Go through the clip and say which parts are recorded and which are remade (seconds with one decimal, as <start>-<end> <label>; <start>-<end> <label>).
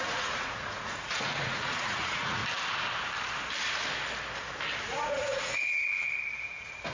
0.0-2.4 remade; 2.4-4.8 recorded; 4.8-6.9 remade